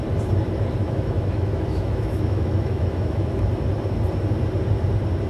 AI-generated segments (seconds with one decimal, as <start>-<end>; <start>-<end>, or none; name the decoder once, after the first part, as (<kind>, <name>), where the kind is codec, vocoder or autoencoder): 0.8-3.4 (autoencoder, DAC-VAE)